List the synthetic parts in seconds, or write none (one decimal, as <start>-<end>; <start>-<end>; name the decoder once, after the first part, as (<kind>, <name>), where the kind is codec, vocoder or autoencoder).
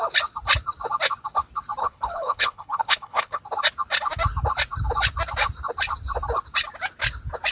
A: 1.8-3.4 (codec, HILCodec)